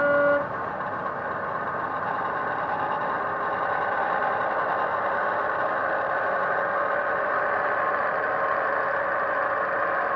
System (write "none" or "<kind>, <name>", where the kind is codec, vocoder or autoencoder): none